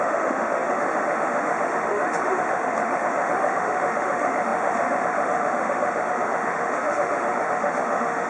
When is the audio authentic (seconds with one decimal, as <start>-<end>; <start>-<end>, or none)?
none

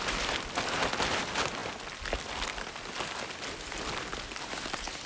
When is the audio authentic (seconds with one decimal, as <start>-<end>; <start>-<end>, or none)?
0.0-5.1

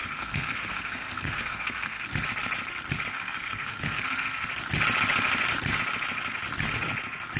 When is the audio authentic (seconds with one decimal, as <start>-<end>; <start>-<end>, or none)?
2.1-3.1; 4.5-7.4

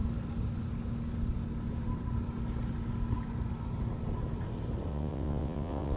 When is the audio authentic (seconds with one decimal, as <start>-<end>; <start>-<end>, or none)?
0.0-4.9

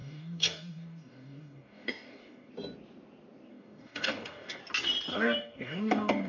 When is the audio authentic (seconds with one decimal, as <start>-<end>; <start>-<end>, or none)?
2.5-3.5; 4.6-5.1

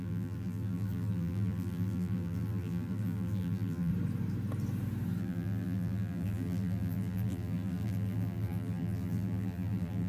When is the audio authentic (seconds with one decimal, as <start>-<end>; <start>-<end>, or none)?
3.9-5.2

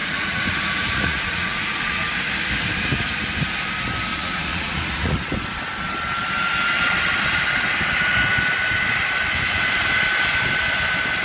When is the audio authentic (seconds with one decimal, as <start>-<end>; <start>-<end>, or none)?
2.1-4.1; 5.2-11.2

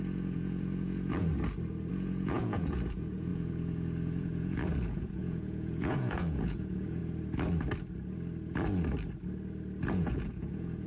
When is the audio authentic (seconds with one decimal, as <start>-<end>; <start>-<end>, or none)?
1.3-1.9; 7.0-9.9